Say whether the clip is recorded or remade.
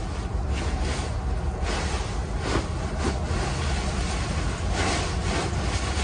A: recorded